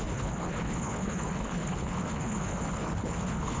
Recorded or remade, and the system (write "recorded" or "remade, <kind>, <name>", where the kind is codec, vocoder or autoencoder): remade, codec, HILCodec